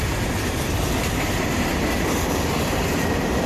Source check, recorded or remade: remade